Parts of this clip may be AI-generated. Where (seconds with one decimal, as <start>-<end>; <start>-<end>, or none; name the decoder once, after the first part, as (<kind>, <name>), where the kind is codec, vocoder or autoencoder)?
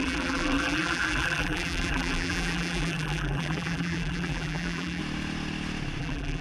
0.0-5.0 (vocoder, BigVGAN v2); 6.0-6.4